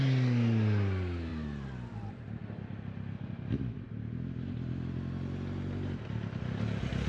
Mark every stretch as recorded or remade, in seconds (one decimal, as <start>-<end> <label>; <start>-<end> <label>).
0.0-7.1 recorded

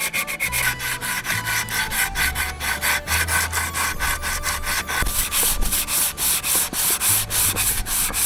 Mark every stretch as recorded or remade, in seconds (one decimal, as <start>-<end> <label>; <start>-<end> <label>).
0.0-8.3 recorded

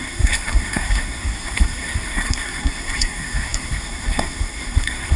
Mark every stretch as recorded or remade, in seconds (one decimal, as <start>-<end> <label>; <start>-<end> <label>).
0.0-5.2 remade

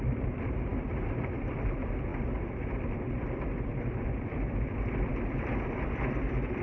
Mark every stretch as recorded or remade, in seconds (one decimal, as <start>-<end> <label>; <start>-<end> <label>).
0.0-0.7 remade; 0.7-1.2 recorded; 1.2-2.1 remade; 2.1-2.7 recorded; 2.7-6.6 remade

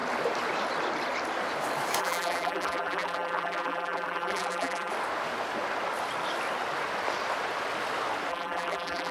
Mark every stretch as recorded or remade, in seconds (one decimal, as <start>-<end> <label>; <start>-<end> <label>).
0.0-2.0 recorded; 2.0-4.9 remade; 4.9-8.3 recorded; 8.3-9.1 remade

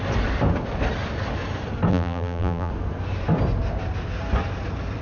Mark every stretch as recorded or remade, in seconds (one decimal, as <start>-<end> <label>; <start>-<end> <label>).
0.0-1.9 recorded; 1.9-2.7 remade; 2.7-5.0 recorded

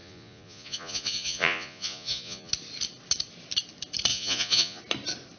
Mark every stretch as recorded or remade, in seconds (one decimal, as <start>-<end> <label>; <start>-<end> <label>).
0.0-2.5 remade; 2.5-4.1 recorded; 4.1-4.8 remade; 4.8-5.4 recorded

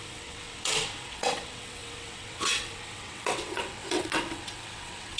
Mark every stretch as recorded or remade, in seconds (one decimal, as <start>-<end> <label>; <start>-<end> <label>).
0.0-5.2 remade